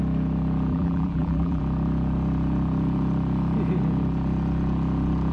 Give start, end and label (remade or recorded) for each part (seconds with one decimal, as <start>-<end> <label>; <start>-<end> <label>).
0.0-0.7 recorded; 0.7-1.6 remade; 1.6-5.3 recorded

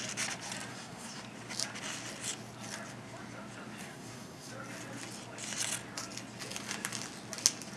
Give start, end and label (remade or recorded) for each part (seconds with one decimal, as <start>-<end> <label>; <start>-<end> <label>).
0.0-0.7 recorded; 0.7-1.2 remade; 1.2-3.8 recorded; 3.8-4.5 remade; 4.5-7.8 recorded

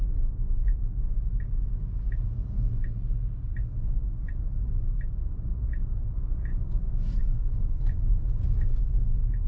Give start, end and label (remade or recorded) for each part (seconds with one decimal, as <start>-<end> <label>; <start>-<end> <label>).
0.0-9.5 recorded

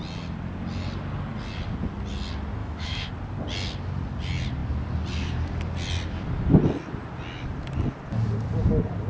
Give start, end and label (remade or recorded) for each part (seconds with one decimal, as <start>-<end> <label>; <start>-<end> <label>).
0.0-2.6 recorded; 2.6-3.1 remade; 3.1-9.1 recorded

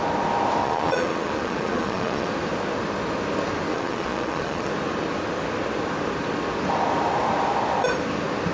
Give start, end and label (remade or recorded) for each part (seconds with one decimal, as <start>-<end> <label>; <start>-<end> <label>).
0.0-0.6 recorded; 0.6-2.3 remade; 2.3-3.7 recorded; 3.7-4.7 remade; 4.7-8.5 recorded

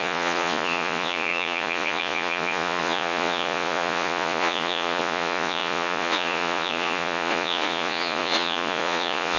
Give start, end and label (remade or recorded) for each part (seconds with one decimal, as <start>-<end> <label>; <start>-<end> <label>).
0.0-9.4 remade

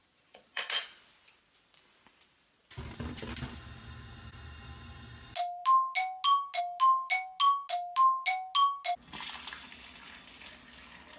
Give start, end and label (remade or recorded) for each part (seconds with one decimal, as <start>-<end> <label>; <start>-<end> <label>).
0.0-0.8 remade; 0.8-11.2 recorded